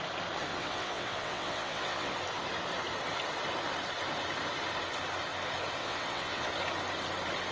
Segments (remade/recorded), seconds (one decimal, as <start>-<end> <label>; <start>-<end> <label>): 0.0-0.5 recorded; 0.5-2.1 remade; 2.1-5.8 recorded; 5.8-6.5 remade; 6.5-7.5 recorded